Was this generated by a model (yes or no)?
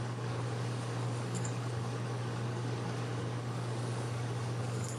yes